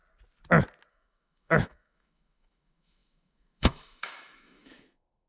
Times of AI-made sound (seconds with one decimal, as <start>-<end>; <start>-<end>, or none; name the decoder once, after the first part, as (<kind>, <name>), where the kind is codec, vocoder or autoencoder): 0.9-5.3 (autoencoder, DAC-VAE)